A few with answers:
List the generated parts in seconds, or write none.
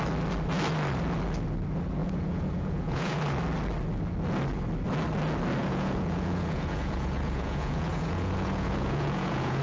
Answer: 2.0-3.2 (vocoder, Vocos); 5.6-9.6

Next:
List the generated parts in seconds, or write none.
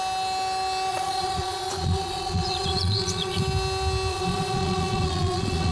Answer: 0.9-3.4 (vocoder, Vocos); 4.1-5.7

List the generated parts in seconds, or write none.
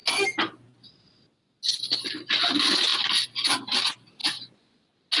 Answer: 4.2-4.8 (vocoder, Vocos)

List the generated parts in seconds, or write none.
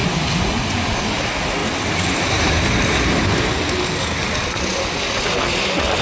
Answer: none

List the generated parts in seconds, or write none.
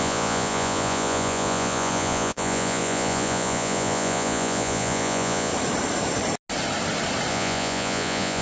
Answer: 0.0-5.5 (vocoder, Vocos); 7.3-8.4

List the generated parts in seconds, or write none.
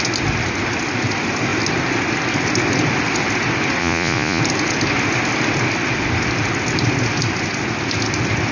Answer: 3.8-4.4 (vocoder, Vocos)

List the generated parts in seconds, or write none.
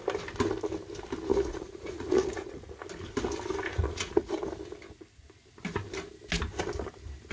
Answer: 1.3-2.8 (vocoder, Vocos); 3.7-4.3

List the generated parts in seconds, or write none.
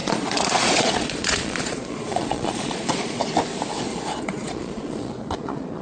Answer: 0.0-3.2 (vocoder, Vocos); 3.9-5.8